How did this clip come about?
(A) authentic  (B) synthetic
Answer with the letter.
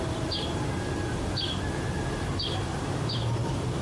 A